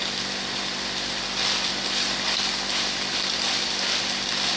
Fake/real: real